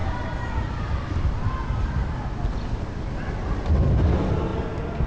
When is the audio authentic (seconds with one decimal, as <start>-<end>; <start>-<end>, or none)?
0.0-5.1